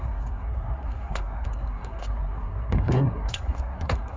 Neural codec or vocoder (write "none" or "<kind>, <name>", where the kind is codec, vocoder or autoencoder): codec, SNAC